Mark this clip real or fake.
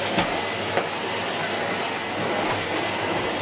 real